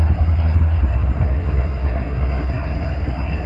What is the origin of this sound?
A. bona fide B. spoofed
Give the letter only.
B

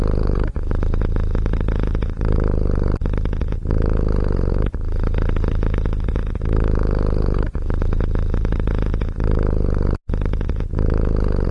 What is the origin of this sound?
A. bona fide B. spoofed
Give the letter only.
A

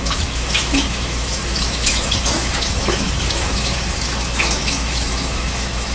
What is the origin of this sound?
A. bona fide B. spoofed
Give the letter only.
B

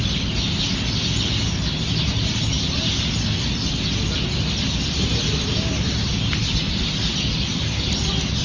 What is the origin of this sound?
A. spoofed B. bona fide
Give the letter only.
B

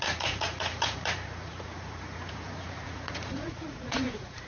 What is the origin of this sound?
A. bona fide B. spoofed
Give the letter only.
B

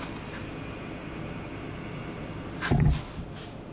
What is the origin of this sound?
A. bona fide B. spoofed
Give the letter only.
A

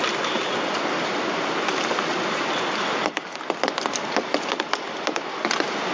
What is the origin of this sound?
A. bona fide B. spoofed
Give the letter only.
A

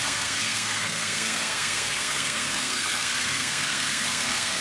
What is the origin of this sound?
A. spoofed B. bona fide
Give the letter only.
A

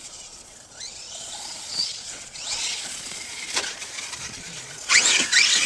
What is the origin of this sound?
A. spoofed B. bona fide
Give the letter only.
A